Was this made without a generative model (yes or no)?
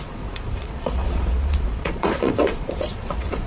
no